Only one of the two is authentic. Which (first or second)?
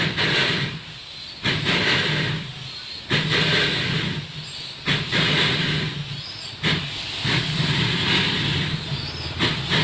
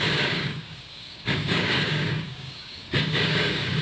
first